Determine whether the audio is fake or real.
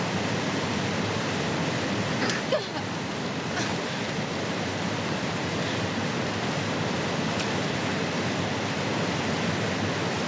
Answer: real